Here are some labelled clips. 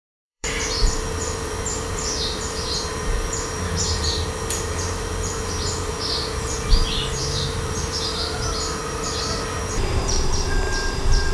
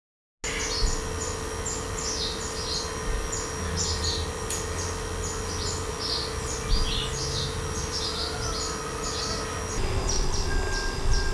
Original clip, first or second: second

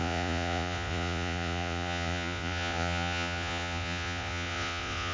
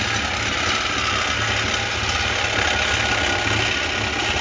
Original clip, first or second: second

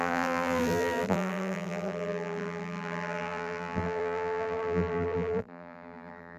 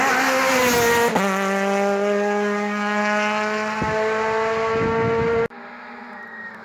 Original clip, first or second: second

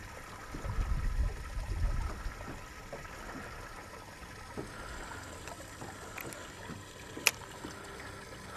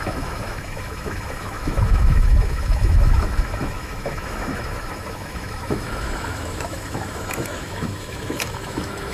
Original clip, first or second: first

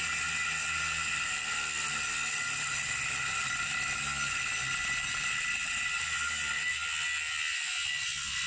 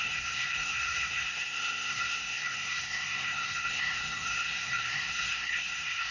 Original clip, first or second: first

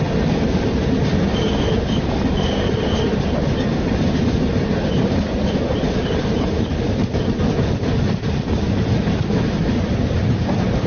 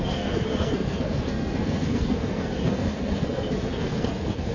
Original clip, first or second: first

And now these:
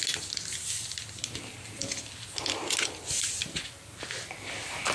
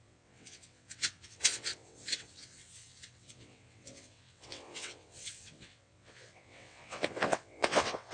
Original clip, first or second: first